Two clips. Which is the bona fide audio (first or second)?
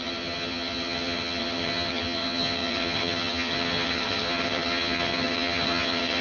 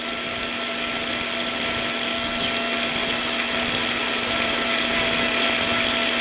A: second